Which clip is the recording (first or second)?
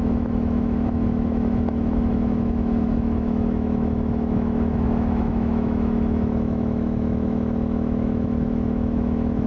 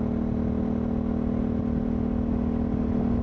second